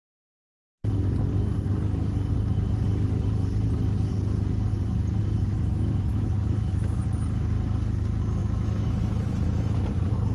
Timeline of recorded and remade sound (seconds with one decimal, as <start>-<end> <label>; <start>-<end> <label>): 0.0-5.5 recorded; 5.5-7.0 remade; 7.0-8.4 recorded; 8.4-9.8 remade; 9.8-10.3 recorded